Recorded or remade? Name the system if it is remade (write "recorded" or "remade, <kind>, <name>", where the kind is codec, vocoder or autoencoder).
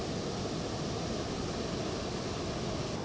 recorded